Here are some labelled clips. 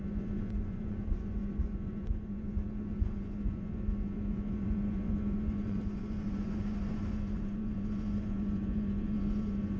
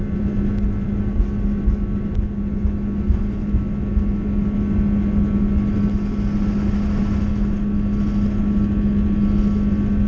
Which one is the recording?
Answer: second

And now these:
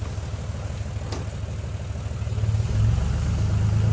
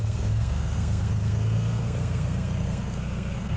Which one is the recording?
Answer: first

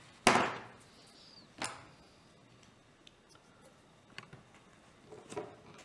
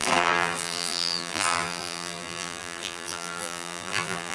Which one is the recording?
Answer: first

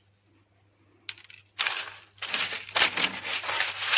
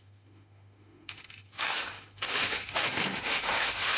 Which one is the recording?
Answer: first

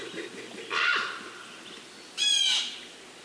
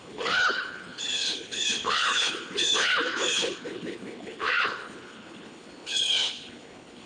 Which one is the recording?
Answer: first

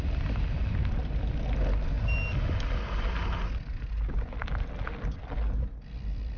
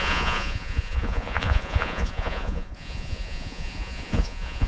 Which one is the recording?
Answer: first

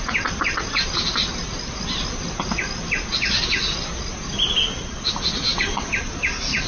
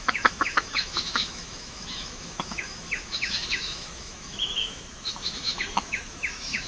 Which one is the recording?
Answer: first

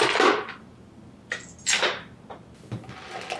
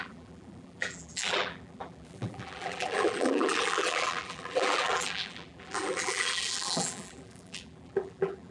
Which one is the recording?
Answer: first